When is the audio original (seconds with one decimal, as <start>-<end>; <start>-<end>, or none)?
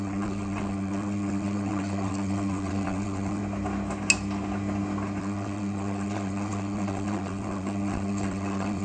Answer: 3.4-5.2